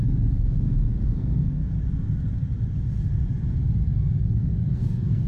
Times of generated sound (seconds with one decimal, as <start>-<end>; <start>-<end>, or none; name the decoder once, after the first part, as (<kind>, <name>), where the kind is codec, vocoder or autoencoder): 0.0-1.6 (codec, SNAC); 3.8-5.3